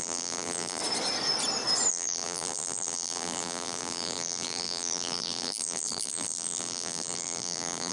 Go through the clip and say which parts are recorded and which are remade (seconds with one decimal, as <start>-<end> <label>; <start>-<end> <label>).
0.0-0.8 remade; 0.8-1.9 recorded; 1.9-7.9 remade